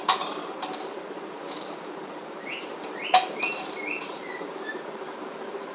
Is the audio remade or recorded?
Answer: remade